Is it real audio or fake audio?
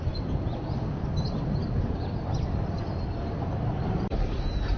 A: real